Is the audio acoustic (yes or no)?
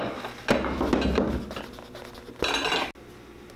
yes